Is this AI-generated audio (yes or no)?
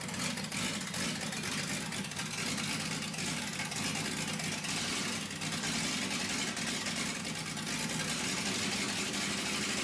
no